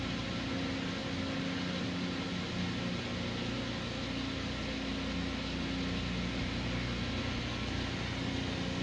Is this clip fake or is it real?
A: real